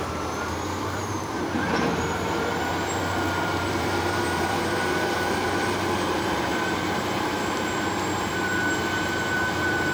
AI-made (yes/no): yes